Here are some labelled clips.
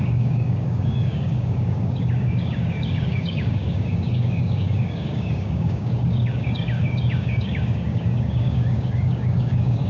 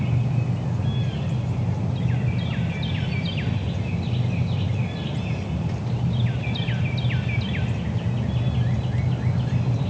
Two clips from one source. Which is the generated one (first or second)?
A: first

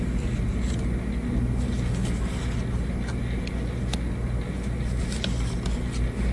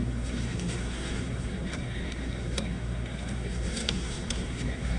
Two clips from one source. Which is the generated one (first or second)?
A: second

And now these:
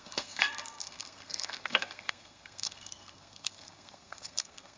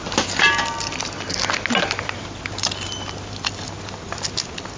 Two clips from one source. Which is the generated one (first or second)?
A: first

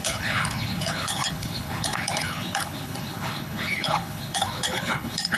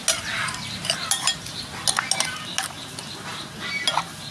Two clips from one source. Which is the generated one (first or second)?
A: first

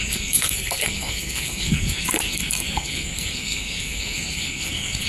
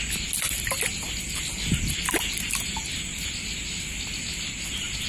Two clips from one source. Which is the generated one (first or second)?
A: first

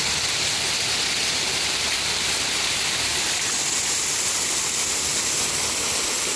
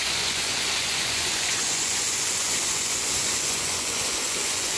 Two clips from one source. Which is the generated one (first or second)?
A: second